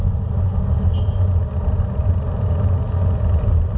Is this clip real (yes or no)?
yes